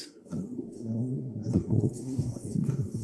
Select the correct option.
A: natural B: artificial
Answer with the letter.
B